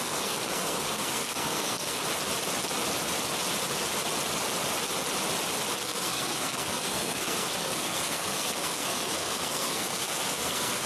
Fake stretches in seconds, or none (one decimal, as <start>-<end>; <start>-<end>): 0.0-2.0; 5.8-10.9